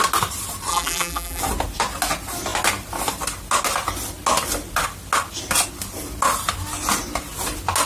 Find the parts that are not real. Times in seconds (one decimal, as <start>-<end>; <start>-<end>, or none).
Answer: 0.7-1.4